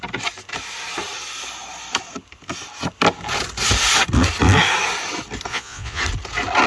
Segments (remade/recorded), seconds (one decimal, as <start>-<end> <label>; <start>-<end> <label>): 0.0-5.5 recorded; 5.5-6.0 remade; 6.0-6.7 recorded